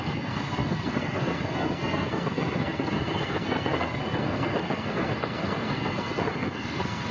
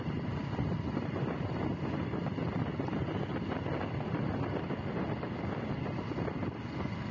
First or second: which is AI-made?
first